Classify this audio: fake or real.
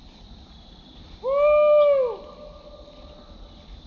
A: real